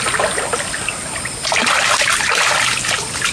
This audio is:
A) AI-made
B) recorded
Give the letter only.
B